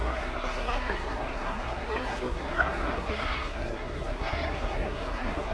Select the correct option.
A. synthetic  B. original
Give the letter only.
A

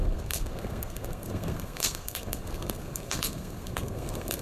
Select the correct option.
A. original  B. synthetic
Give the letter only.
B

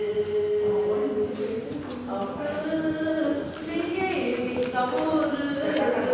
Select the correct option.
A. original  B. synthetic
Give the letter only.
A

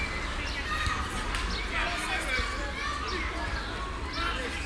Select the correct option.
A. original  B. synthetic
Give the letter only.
A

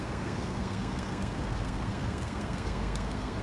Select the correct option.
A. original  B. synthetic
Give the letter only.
B